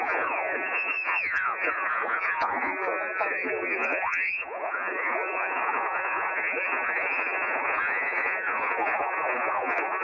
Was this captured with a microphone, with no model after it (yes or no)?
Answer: no